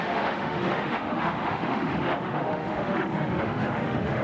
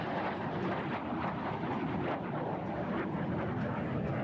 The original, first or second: second